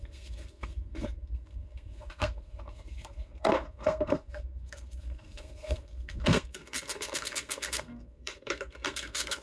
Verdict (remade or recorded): remade